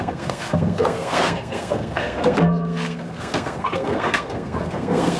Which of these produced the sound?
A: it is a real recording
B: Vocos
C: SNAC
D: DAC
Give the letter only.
C